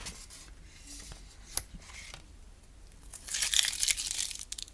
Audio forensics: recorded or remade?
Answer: recorded